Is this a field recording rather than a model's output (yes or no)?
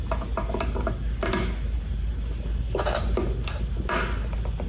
yes